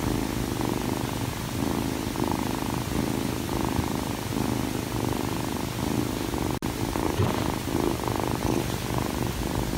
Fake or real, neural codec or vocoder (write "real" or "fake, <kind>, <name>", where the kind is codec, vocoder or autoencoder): real